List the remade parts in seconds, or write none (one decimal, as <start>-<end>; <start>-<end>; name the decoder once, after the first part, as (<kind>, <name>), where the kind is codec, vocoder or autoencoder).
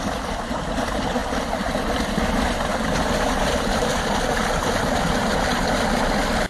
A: 0.0-2.7 (vocoder, BigVGAN v2); 3.5-3.9; 5.5-6.5